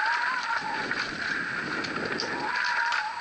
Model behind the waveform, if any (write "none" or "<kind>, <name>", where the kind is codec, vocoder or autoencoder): none